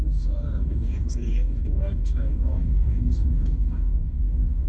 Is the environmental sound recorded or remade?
remade